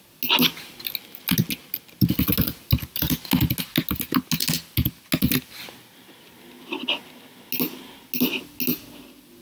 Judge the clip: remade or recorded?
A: recorded